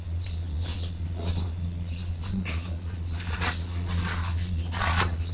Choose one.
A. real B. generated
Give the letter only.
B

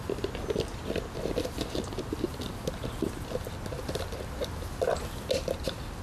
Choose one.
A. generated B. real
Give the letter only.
B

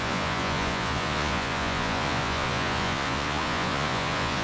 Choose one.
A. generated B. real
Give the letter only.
A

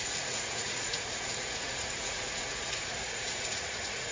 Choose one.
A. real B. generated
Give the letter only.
B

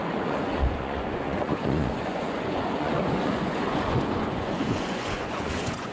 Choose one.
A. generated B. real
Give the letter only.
A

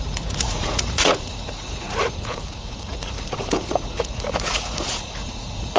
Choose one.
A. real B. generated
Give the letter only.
B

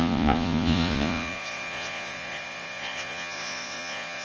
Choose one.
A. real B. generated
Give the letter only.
B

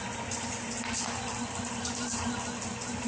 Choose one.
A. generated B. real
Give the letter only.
B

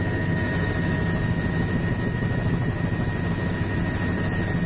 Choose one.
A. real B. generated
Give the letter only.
A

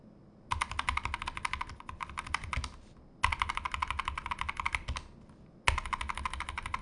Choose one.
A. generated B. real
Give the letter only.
B